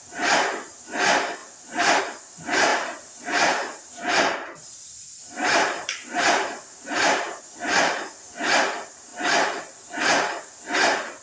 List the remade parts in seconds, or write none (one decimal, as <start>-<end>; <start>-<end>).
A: 2.7-7.4